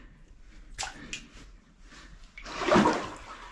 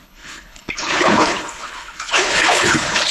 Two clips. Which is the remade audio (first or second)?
second